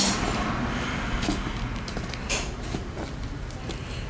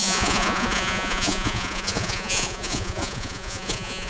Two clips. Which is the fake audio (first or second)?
second